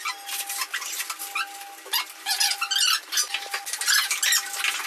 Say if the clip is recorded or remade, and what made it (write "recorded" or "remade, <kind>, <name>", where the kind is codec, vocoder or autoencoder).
recorded